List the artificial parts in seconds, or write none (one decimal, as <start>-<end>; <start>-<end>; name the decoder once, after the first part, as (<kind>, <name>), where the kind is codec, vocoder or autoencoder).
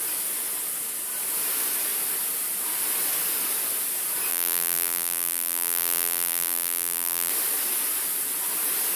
4.3-7.3 (vocoder, BigVGAN v2)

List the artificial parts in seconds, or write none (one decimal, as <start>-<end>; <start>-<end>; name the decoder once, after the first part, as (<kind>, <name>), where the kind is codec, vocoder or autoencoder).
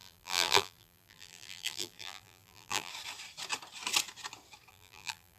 0.0-2.9 (vocoder, BigVGAN v2); 4.7-5.4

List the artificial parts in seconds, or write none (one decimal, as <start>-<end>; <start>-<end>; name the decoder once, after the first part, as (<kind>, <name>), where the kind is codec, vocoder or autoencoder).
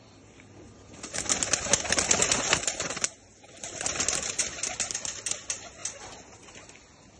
none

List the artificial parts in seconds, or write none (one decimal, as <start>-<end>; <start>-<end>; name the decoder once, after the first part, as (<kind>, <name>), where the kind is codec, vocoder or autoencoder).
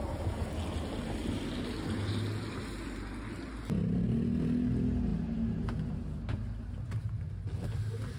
none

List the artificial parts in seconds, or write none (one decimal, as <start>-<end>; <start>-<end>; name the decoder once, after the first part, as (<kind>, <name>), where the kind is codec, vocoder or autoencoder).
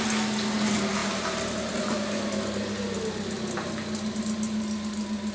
none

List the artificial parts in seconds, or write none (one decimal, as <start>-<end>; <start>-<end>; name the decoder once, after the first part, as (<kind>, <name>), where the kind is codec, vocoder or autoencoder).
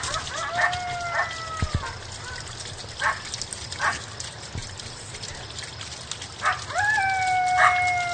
none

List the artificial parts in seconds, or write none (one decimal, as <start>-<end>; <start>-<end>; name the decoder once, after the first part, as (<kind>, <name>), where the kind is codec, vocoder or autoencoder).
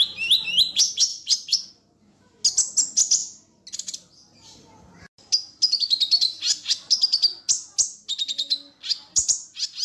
1.1-1.7 (vocoder, BigVGAN v2)